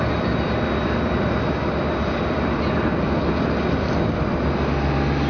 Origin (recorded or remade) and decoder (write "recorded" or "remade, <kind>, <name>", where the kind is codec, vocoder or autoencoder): recorded